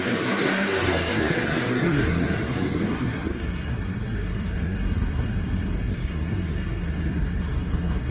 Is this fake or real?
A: fake